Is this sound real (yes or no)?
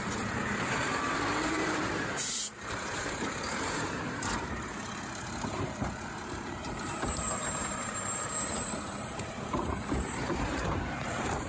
no